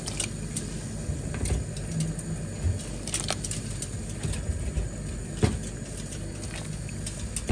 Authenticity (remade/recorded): recorded